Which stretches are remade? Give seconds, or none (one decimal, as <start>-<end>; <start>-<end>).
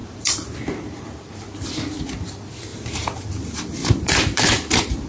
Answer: 0.0-1.3; 2.7-3.2; 3.8-5.1